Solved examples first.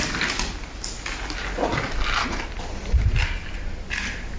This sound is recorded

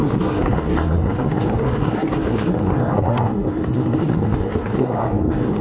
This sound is remade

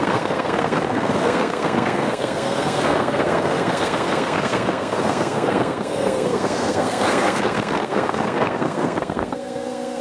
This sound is remade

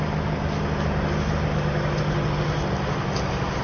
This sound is recorded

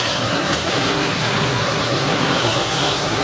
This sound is remade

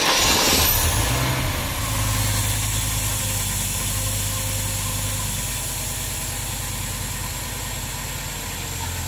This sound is recorded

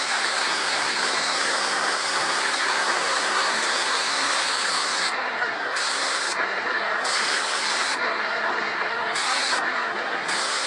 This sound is remade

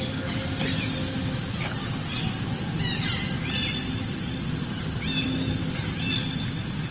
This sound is recorded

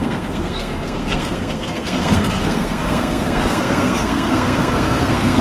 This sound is remade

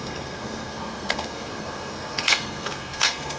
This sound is remade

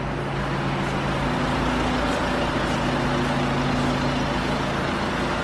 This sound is recorded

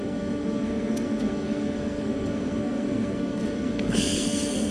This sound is remade